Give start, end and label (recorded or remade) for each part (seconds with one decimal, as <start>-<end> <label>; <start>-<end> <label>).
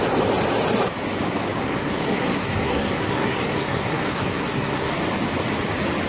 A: 0.0-1.6 recorded; 1.6-4.9 remade; 4.9-6.1 recorded